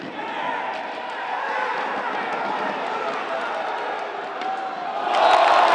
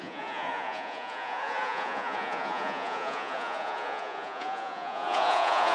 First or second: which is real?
first